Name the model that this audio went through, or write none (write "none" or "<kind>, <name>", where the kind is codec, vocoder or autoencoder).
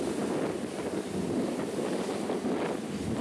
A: none